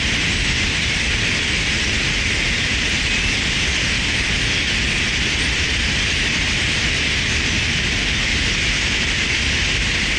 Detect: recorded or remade recorded